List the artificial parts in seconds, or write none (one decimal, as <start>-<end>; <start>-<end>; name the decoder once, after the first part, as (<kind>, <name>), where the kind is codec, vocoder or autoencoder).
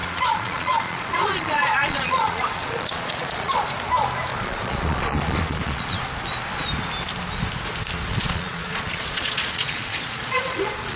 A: 0.0-3.7 (vocoder, Vocos); 4.3-6.0; 8.1-11.0